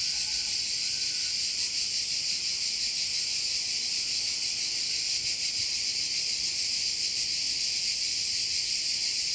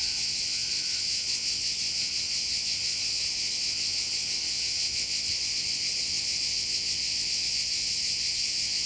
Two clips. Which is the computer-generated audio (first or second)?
second